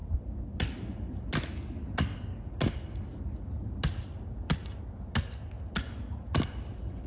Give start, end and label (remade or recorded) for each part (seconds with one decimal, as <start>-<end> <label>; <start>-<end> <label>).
0.0-7.1 recorded